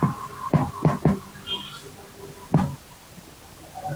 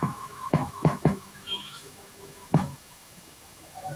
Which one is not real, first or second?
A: second